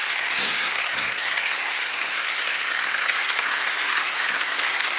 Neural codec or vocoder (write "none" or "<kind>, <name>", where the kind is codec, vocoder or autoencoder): codec, SNAC